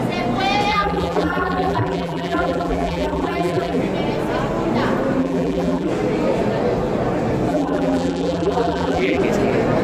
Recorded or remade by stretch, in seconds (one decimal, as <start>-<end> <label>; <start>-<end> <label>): 0.0-0.7 recorded; 0.7-3.8 remade; 3.8-5.2 recorded; 5.2-5.9 remade; 5.9-7.5 recorded; 7.5-9.2 remade; 9.2-9.8 recorded